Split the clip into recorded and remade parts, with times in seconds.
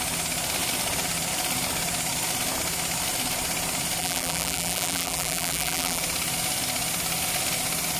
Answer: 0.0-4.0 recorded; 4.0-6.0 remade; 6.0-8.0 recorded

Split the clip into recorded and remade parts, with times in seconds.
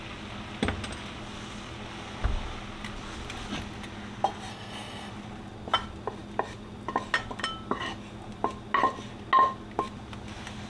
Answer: 0.0-4.5 recorded; 4.5-5.1 remade; 5.1-10.7 recorded